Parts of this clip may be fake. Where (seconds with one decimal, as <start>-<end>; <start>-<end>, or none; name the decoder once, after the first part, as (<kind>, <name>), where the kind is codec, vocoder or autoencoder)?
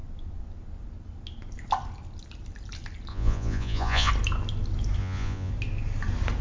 3.1-4.1 (vocoder, Vocos); 5.0-5.5